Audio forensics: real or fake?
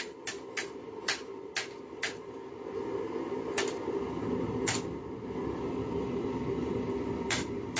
real